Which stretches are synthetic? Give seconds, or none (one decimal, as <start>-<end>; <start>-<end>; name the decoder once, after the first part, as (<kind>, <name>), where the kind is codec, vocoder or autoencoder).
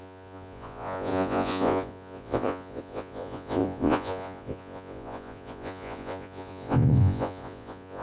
0.0-8.0 (vocoder, Vocos)